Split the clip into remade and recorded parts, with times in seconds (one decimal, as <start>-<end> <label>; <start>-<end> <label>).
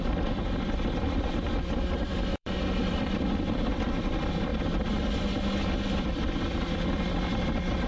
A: 0.0-4.5 remade; 4.5-7.1 recorded; 7.1-7.9 remade